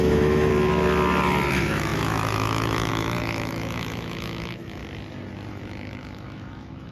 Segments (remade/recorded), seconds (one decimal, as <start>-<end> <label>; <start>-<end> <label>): 0.0-0.5 remade; 0.5-1.5 recorded; 1.5-4.8 remade; 4.8-5.5 recorded; 5.5-6.9 remade